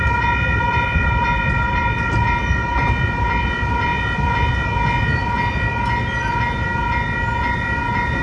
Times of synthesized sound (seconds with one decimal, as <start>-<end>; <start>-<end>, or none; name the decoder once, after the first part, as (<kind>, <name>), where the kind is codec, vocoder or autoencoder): none